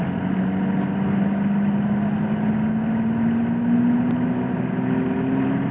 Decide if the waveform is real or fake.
real